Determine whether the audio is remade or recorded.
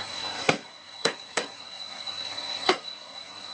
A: remade